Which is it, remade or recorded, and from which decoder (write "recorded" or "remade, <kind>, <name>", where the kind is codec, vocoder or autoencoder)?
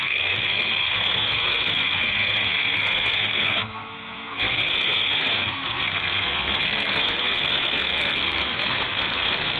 remade, codec, SNAC